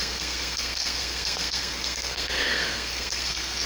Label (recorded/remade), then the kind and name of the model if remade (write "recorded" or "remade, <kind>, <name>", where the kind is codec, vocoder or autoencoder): remade, codec, SNAC